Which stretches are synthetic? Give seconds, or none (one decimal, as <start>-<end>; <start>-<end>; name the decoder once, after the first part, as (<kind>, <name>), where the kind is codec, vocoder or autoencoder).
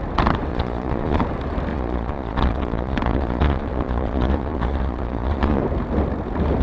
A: 0.5-1.2 (vocoder, Vocos); 1.7-5.6